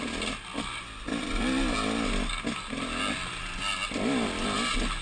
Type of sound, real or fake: real